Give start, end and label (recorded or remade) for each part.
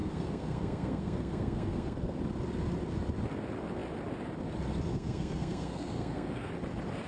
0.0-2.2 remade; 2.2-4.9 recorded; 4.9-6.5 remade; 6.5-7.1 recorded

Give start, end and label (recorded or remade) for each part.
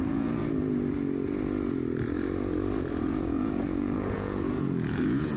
0.0-0.4 remade; 0.4-3.0 recorded; 3.0-5.4 remade